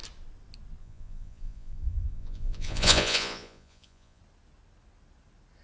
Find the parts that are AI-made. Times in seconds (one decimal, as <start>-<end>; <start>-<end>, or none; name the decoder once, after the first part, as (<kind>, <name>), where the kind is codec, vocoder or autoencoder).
0.8-4.2 (vocoder, Vocos)